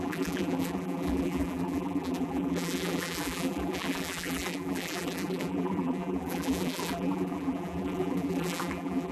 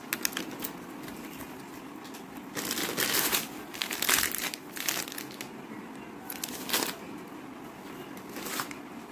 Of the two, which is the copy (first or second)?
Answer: first